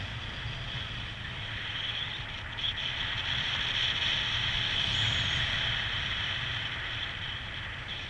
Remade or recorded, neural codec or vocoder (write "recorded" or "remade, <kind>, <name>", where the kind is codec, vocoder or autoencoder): recorded